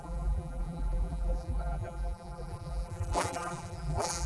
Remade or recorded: remade